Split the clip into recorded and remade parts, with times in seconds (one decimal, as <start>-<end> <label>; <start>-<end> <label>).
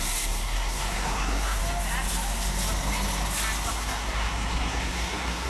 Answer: 0.0-1.6 remade; 1.6-3.7 recorded; 3.7-5.5 remade